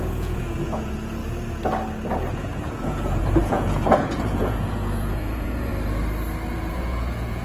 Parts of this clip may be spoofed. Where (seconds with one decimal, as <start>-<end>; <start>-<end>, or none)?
0.0-1.2; 2.3-5.7; 6.5-7.4